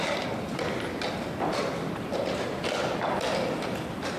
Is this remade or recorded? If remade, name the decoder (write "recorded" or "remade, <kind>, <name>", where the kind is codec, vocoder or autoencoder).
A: recorded